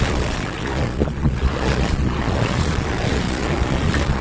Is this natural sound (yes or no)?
no